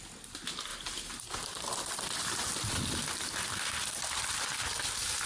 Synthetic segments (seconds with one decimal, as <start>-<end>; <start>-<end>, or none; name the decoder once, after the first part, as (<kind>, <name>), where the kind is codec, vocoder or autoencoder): none